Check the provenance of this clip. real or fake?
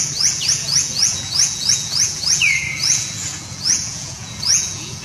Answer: fake